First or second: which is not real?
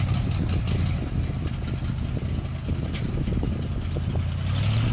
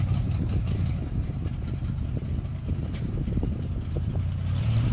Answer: second